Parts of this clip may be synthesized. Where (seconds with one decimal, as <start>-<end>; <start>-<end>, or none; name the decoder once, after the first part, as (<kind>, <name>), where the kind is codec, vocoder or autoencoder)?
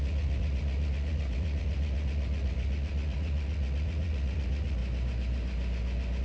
0.0-4.8 (vocoder, Vocos)